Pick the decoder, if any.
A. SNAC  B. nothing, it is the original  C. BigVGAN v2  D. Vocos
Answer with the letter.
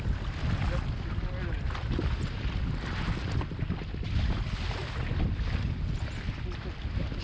B